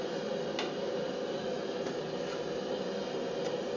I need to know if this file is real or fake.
real